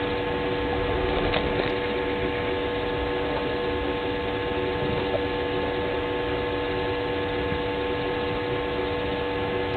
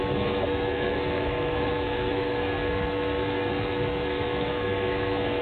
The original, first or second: first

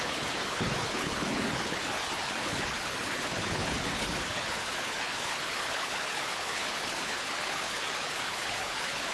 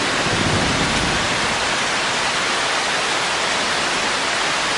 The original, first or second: second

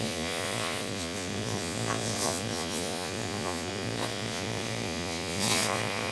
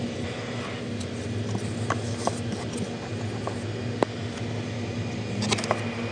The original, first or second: second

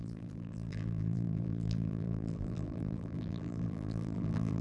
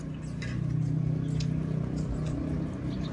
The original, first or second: second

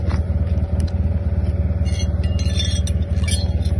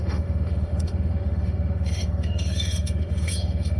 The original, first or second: first